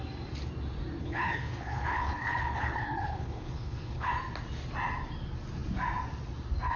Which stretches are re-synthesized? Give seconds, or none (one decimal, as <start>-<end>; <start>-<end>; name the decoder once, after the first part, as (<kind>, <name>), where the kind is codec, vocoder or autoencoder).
1.0-4.1 (codec, HILCodec)